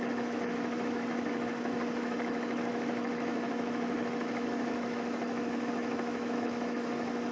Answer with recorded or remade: remade